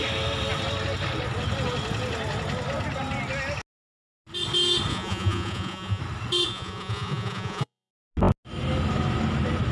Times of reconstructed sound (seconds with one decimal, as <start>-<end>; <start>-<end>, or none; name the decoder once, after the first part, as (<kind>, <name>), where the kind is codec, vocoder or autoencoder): 4.9-6.0 (vocoder, Vocos); 6.5-7.9